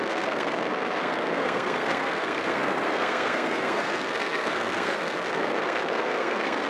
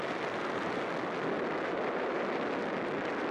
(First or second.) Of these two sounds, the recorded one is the second